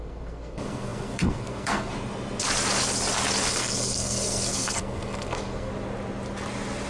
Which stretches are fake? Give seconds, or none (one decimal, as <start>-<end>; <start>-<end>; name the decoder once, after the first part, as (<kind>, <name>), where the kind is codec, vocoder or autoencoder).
0.0-1.9 (codec, SNAC); 3.5-5.7